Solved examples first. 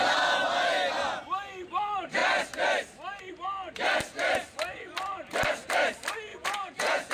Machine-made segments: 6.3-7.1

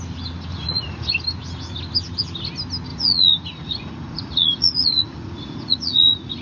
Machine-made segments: 0.5-1.1; 2.9-6.4